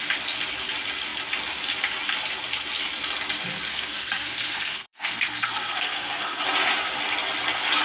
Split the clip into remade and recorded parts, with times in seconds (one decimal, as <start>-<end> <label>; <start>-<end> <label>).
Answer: 0.0-3.7 recorded; 3.7-6.4 remade; 6.4-7.8 recorded